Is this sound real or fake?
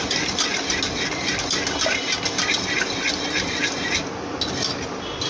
real